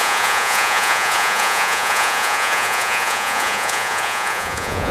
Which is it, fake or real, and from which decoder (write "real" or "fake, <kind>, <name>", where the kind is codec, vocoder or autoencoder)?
fake, vocoder, Vocos